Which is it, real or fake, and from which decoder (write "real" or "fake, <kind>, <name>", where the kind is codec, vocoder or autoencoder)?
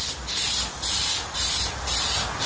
real